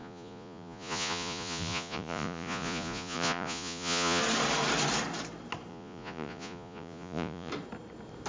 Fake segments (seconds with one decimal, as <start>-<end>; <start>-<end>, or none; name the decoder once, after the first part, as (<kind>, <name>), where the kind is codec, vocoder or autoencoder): 0.0-4.2 (vocoder, Vocos); 5.7-7.5